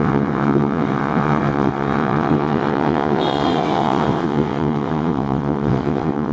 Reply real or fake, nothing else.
fake